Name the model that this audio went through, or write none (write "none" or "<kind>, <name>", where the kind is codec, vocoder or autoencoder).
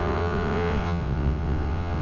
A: vocoder, WaveNeXt